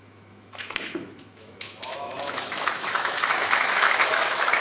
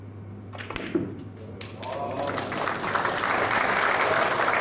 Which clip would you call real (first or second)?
second